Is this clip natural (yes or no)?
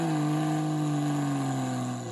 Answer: yes